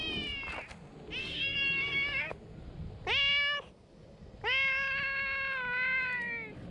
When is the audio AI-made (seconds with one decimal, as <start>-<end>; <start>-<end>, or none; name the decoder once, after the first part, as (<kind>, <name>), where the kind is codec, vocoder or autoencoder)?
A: 1.2-2.3 (codec, DAC)